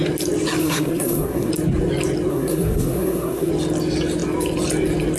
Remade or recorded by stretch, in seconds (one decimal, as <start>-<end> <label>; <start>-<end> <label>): 0.0-0.6 recorded; 0.6-1.5 remade; 1.5-2.3 recorded; 2.3-3.5 remade; 3.5-5.2 recorded